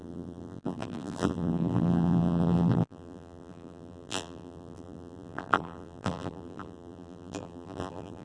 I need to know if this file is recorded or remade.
remade